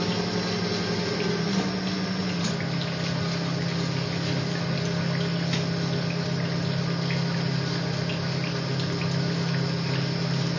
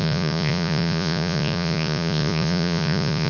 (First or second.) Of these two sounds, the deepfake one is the second